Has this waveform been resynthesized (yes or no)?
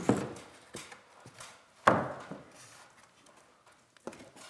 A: no